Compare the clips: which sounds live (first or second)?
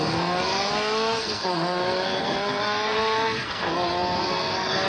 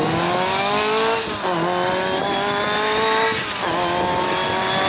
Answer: second